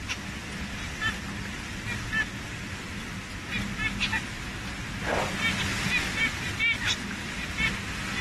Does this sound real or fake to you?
real